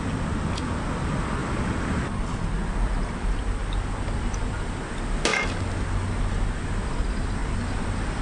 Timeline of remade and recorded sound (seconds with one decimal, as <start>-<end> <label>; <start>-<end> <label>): 0.0-3.6 recorded; 3.6-4.8 remade; 4.8-8.2 recorded